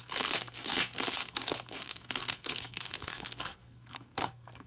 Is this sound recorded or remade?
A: remade